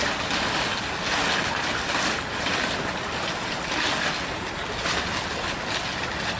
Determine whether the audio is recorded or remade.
recorded